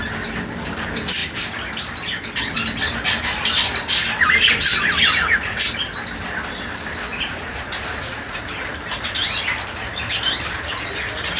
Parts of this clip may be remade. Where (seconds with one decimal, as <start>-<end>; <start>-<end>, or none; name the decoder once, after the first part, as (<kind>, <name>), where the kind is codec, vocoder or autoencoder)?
7.1-8.4 (vocoder, Vocos)

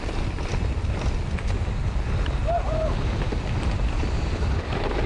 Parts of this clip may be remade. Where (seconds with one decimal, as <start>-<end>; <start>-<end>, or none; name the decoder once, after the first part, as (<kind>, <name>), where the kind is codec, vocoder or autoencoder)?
0.0-2.4 (vocoder, BigVGAN v2); 3.3-5.1

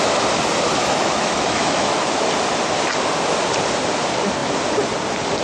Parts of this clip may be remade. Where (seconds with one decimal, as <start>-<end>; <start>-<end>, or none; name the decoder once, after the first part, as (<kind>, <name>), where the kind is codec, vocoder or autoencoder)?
0.8-2.1 (autoencoder, DAC-VAE)

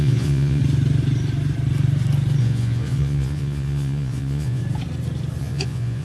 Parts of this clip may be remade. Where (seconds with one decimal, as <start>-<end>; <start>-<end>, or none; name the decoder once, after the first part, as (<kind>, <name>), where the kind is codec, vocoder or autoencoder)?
0.0-0.6 (vocoder, Vocos); 2.4-4.6; 5.4-6.0